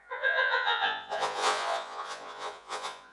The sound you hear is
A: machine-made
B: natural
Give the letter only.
A